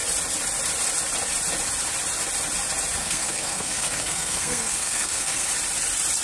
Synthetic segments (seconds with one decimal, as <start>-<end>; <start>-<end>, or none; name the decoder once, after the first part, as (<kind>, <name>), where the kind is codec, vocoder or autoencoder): 3.0-5.5 (codec, SNAC)